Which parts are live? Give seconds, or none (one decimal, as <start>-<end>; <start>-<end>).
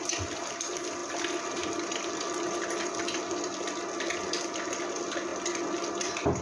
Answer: 0.0-6.4